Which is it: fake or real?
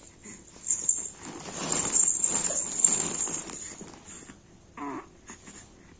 real